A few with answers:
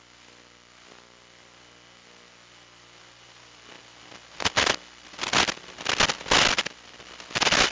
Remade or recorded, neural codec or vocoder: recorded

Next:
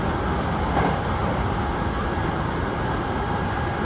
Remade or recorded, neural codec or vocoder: remade, vocoder, BigVGAN v2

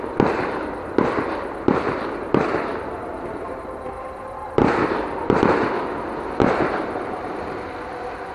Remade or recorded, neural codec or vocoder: remade, vocoder, BigVGAN v2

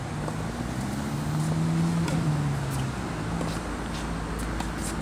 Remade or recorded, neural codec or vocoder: recorded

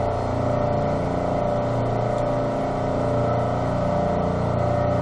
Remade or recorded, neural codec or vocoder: recorded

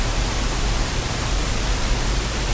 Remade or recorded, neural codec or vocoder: remade, vocoder, BigVGAN v2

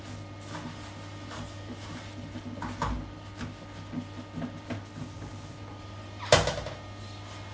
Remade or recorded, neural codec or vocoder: recorded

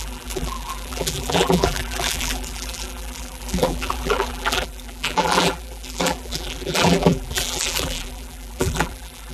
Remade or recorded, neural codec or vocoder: remade, vocoder, BigVGAN v2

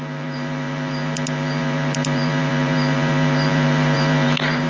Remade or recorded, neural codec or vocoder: remade, vocoder, BigVGAN v2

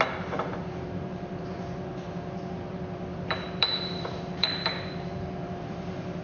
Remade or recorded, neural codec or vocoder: remade, vocoder, BigVGAN v2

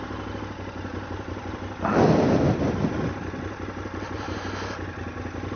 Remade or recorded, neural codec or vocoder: recorded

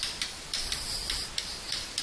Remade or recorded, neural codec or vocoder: recorded